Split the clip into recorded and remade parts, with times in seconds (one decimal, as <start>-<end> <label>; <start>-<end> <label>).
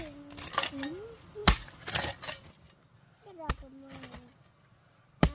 0.0-5.3 recorded